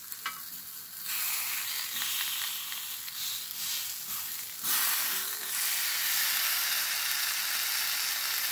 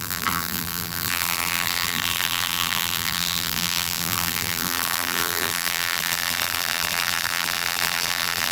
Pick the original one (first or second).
first